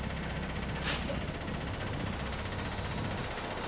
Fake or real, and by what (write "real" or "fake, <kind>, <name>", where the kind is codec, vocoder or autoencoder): real